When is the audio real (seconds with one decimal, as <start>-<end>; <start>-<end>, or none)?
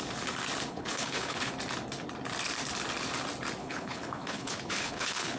0.0-0.7; 1.5-3.6